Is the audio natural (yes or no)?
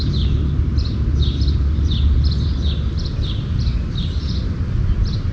yes